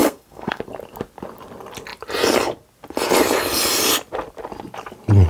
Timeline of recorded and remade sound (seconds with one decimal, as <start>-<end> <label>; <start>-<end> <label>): 0.0-0.6 remade; 0.6-5.3 recorded